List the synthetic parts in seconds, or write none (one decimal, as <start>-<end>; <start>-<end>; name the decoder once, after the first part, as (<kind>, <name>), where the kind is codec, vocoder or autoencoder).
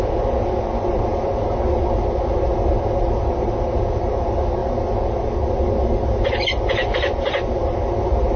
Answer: none